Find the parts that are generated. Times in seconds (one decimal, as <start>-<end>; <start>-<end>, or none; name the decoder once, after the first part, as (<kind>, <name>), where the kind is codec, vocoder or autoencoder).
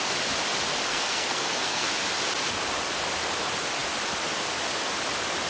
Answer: 0.9-1.9 (codec, SNAC)